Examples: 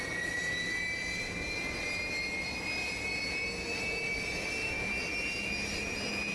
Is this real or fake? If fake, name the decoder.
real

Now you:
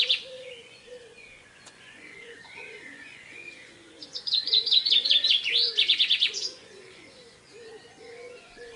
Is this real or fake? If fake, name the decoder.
fake, vocoder, Vocos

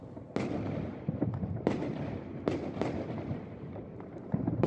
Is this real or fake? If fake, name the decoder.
real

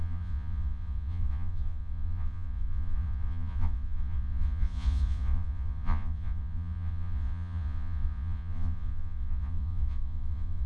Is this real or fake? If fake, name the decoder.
fake, vocoder, Vocos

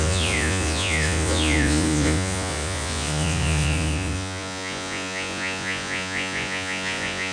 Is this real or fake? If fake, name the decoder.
fake, vocoder, Vocos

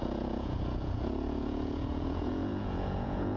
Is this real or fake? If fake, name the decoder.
fake, vocoder, Vocos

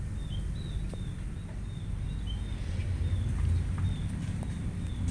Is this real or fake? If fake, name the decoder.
real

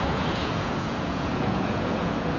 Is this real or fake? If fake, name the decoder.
fake, vocoder, Vocos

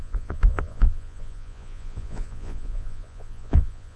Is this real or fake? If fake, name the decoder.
fake, vocoder, Vocos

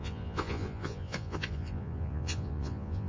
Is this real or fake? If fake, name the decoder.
fake, vocoder, Vocos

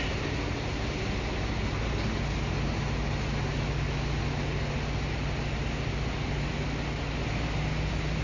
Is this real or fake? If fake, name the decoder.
real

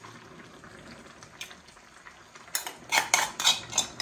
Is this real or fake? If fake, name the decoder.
real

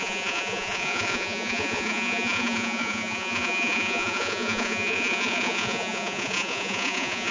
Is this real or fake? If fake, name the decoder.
fake, vocoder, Vocos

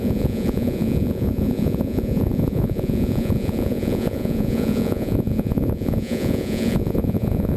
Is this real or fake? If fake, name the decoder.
fake, vocoder, Vocos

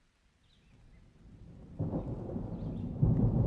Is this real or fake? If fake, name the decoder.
real